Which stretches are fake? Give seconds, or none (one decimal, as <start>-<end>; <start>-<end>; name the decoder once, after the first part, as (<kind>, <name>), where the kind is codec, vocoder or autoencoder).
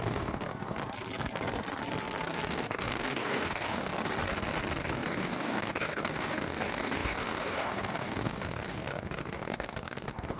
0.0-0.8 (codec, DAC); 2.5-3.9; 4.8-10.4